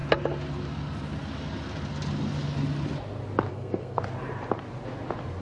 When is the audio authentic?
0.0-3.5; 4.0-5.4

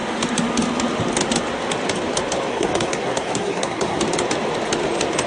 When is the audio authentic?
0.0-2.5; 4.0-5.3